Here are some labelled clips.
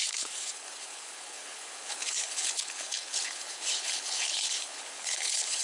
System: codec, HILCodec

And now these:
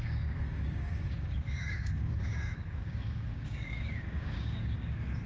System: codec, DAC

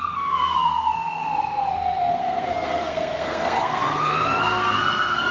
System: codec, SNAC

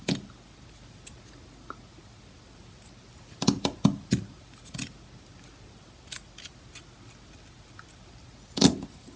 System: none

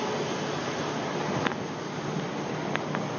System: none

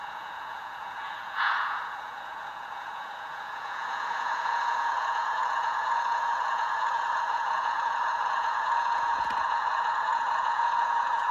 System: vocoder, Vocos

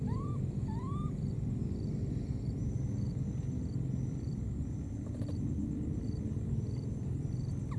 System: none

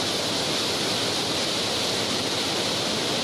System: none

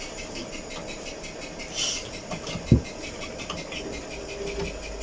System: none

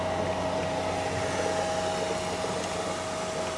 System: none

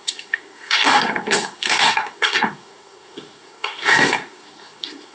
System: codec, SNAC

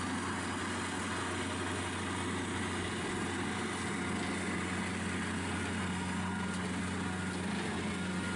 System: none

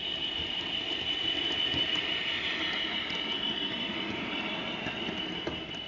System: vocoder, BigVGAN v2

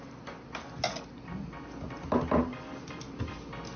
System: none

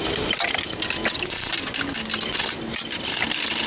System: none